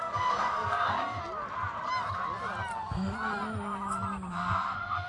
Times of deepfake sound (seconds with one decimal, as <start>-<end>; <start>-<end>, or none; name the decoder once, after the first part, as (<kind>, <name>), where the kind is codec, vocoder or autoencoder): 0.0-1.2 (codec, SNAC); 4.3-5.1